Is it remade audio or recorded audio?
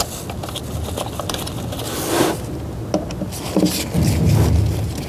recorded